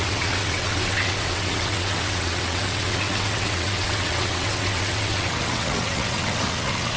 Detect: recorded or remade remade